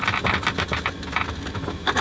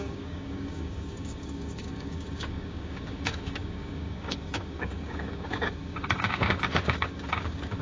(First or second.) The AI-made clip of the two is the second